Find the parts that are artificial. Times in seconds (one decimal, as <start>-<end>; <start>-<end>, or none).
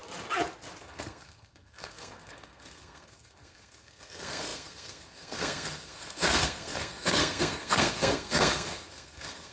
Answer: 0.8-9.5